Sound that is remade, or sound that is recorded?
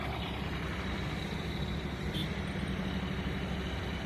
recorded